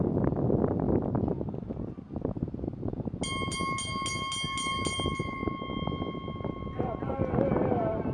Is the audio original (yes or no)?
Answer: yes